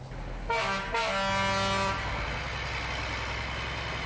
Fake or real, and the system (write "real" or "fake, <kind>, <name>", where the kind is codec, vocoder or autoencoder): real